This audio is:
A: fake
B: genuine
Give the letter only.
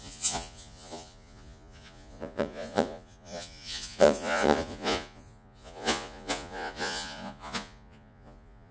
A